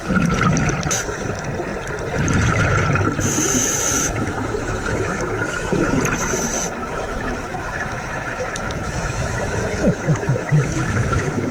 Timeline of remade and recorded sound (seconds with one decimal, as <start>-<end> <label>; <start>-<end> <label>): 0.0-3.6 recorded; 3.6-6.0 remade; 6.0-6.8 recorded; 6.8-11.5 remade